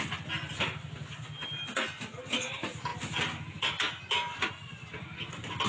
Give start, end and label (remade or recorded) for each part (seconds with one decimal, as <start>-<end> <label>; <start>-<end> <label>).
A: 0.0-2.9 recorded; 2.9-4.0 remade; 4.0-4.9 recorded; 4.9-5.7 remade